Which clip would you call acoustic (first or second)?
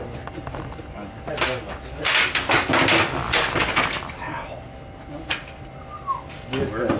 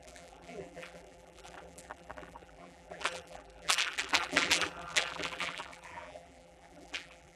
first